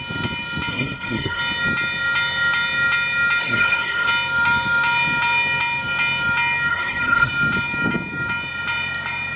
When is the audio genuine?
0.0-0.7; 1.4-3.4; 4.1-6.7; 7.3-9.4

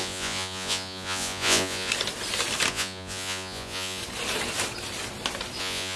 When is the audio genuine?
1.9-2.7; 4.0-5.6

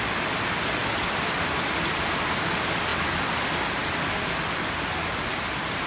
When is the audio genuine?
0.0-5.9

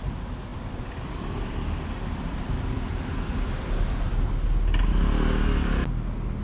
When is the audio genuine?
0.0-0.5; 4.3-6.4

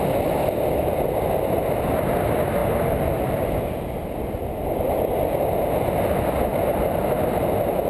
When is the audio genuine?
0.0-7.9